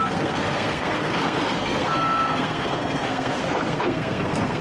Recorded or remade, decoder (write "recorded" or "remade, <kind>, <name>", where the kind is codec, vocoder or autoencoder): remade, codec, SNAC